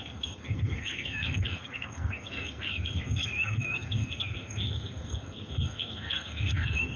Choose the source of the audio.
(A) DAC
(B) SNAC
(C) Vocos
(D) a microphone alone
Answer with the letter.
B